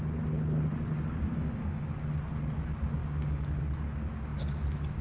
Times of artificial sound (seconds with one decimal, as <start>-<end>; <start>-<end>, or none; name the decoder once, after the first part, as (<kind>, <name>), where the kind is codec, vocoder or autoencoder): 1.3-1.9 (codec, DAC); 3.0-3.6